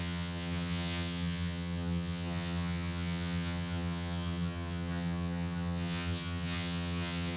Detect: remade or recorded remade